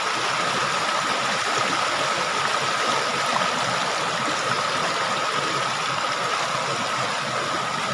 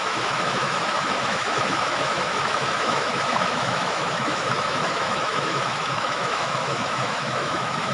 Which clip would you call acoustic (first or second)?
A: first